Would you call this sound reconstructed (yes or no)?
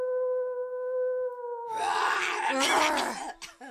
no